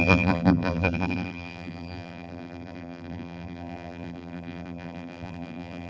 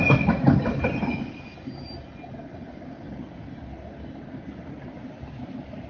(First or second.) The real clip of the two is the second